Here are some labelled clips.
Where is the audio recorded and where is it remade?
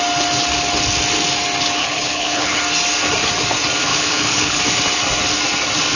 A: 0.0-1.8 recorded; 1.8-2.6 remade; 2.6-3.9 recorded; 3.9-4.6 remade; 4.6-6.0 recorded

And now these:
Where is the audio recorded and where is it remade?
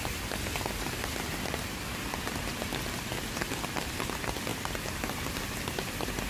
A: 0.0-6.3 recorded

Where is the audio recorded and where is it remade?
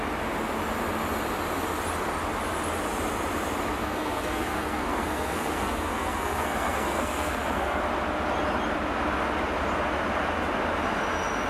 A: 0.0-3.8 recorded; 3.8-7.8 remade; 7.8-11.5 recorded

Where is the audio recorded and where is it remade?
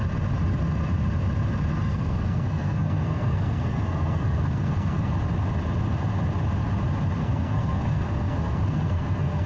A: 0.0-1.8 recorded; 1.8-5.1 remade; 5.1-7.2 recorded; 7.2-9.5 remade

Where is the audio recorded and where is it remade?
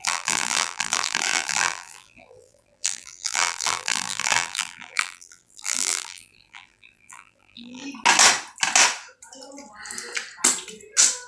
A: 0.0-7.8 remade; 7.8-11.3 recorded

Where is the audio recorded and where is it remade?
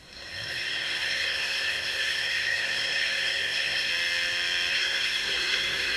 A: 0.0-3.9 remade; 3.9-4.7 recorded; 4.7-6.0 remade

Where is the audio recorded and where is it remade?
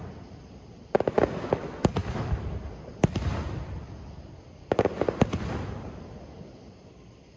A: 0.0-7.4 recorded